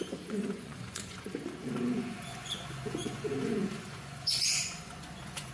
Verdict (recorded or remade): remade